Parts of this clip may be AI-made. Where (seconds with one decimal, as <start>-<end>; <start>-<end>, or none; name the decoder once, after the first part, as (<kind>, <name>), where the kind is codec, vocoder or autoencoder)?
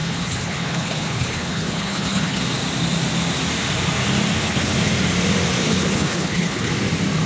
0.0-2.4 (codec, HILCodec); 4.4-4.9; 5.6-6.7